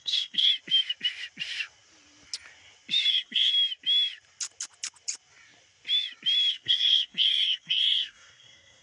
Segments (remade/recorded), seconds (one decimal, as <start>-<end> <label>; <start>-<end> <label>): 0.0-0.5 remade; 0.5-3.1 recorded; 3.1-3.5 remade; 3.5-6.5 recorded; 6.5-8.8 remade